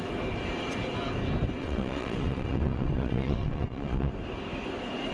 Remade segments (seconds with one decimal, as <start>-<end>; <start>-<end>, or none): 1.6-4.1

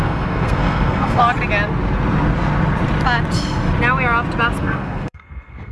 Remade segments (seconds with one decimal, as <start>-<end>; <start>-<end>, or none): 0.0-1.2; 4.6-5.7